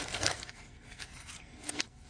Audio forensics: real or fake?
fake